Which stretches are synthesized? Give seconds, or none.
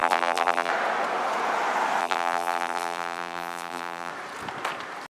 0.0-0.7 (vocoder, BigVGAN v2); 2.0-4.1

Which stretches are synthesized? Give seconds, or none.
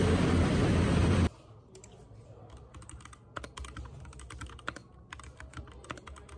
none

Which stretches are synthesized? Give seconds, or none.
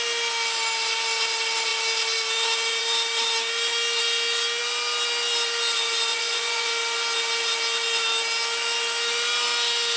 6.1-6.7 (vocoder, Vocos)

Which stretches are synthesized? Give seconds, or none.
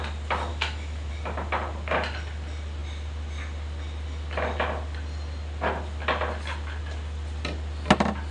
0.5-1.1 (autoencoder, DAC-VAE)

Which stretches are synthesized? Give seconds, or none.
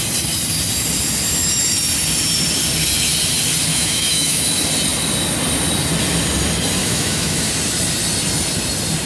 3.7-4.5 (autoencoder, DAC-VAE); 6.8-7.5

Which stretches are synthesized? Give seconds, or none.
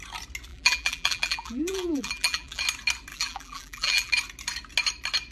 0.5-2.6 (vocoder, BigVGAN v2); 3.1-4.1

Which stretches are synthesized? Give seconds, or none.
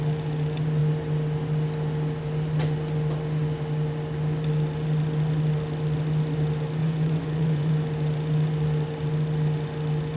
6.8-7.7 (vocoder, Vocos)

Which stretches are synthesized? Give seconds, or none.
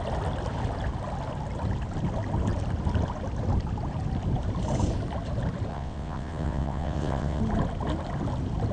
5.7-7.4 (vocoder, WaveNeXt)